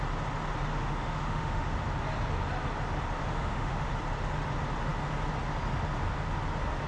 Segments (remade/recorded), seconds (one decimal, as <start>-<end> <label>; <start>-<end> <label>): 0.0-0.7 recorded; 0.7-1.7 remade; 1.7-3.2 recorded; 3.2-3.9 remade; 3.9-6.9 recorded